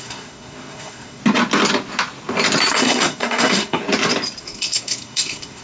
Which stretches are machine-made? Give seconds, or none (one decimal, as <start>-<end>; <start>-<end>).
0.0-1.2; 2.7-3.8; 4.4-5.6